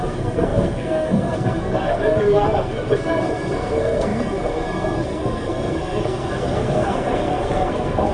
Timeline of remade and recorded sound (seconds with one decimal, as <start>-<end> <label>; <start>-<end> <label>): 0.0-8.1 remade